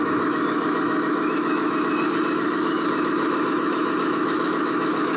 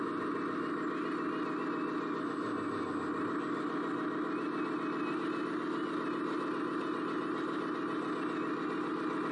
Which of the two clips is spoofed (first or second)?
first